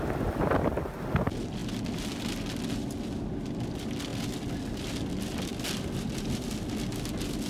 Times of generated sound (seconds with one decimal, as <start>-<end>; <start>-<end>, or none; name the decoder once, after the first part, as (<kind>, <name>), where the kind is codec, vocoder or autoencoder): none